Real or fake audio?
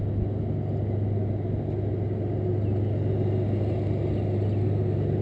real